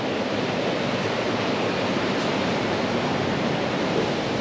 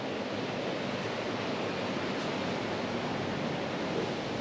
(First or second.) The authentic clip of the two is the second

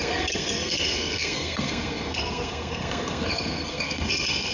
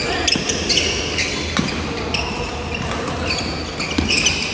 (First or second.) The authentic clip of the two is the second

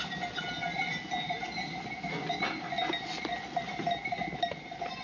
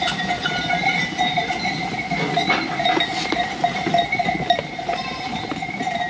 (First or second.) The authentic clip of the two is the first